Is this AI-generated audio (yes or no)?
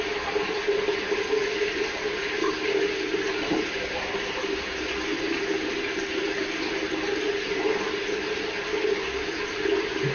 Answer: no